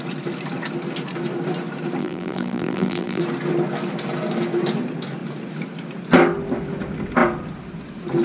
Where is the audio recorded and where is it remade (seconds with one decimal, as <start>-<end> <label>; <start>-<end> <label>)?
0.0-2.0 recorded; 2.0-3.2 remade; 3.2-8.2 recorded